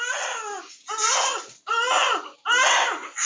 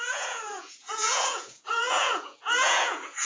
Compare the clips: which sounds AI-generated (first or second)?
second